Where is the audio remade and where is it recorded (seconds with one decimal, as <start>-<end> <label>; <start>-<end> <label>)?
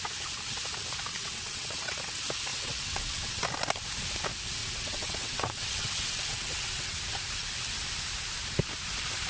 0.0-1.1 recorded; 1.1-2.0 remade; 2.0-2.5 recorded; 2.5-3.4 remade; 3.4-4.6 recorded; 4.6-7.0 remade; 7.0-9.3 recorded